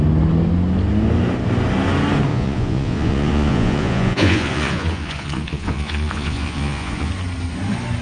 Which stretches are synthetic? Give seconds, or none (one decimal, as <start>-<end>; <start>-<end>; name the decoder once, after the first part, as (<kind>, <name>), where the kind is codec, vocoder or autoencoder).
2.3-7.1 (vocoder, Vocos)